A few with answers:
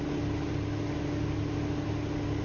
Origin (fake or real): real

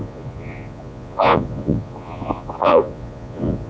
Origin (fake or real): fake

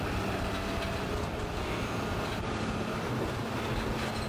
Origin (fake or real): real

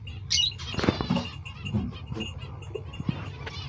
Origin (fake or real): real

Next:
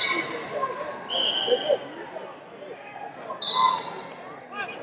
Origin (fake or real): real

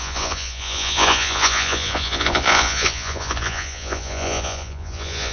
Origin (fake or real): fake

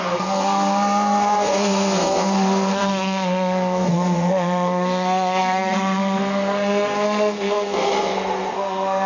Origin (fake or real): fake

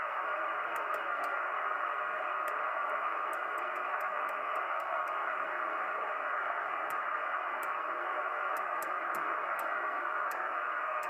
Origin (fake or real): fake